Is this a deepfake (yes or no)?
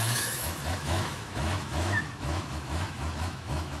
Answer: yes